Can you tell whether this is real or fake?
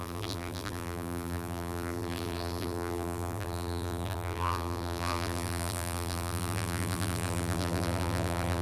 fake